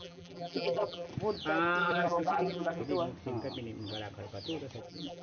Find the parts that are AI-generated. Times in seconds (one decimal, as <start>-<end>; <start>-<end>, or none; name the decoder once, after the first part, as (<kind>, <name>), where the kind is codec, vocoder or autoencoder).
0.0-1.1 (vocoder, BigVGAN v2); 1.8-2.8; 4.8-5.2